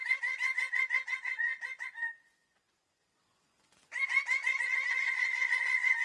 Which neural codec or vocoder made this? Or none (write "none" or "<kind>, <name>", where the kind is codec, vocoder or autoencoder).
vocoder, Vocos